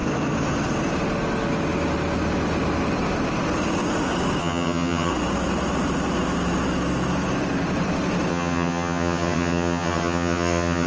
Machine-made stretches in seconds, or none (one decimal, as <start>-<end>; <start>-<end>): 4.4-5.1; 8.3-10.9